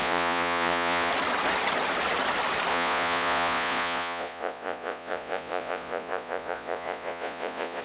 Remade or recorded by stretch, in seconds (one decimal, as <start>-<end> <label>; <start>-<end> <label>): 0.0-1.1 remade; 1.1-2.7 recorded; 2.7-7.8 remade